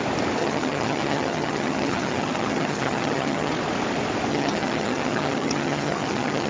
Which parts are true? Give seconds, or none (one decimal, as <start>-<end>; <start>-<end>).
0.0-0.4; 3.5-4.3